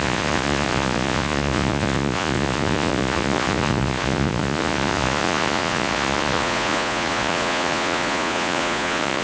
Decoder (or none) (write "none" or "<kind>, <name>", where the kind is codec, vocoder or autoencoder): vocoder, Vocos